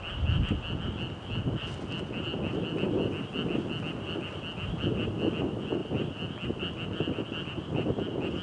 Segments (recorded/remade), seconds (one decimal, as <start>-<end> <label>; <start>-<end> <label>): 0.0-8.4 recorded